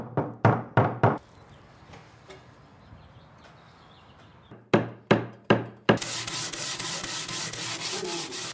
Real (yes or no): yes